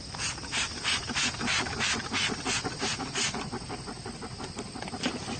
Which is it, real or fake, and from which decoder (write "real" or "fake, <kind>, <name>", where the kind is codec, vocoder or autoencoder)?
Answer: real